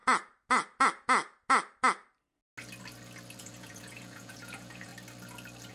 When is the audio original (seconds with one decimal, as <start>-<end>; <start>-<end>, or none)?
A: 0.0-3.4; 4.9-5.7